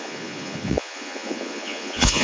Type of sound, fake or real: fake